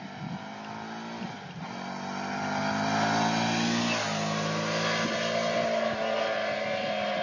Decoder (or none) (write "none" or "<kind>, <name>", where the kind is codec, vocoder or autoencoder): none